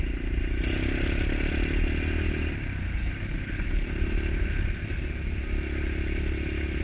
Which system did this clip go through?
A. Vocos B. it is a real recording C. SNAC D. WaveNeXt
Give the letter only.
B